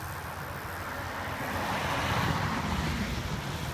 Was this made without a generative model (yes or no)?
yes